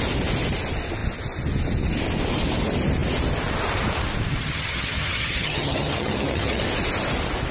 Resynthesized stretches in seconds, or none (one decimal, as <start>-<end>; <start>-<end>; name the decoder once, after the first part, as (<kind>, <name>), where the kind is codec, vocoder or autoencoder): 4.4-6.6 (vocoder, HiFi-GAN)